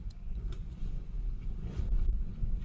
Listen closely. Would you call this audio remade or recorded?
remade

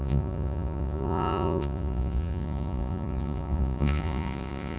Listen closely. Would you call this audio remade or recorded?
remade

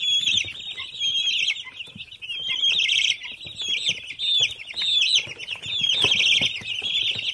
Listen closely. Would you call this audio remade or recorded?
recorded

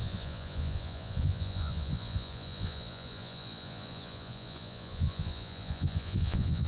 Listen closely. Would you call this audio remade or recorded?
remade